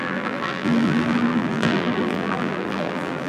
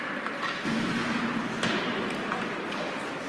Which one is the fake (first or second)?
first